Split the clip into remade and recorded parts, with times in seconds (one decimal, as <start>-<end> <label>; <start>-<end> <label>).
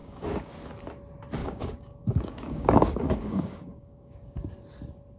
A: 0.0-0.5 remade; 0.5-1.4 recorded; 1.4-4.5 remade; 4.5-5.2 recorded